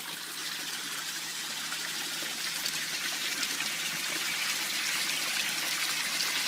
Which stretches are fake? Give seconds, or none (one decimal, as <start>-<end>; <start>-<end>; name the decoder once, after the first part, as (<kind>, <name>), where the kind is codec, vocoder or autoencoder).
0.4-3.2 (vocoder, BigVGAN v2)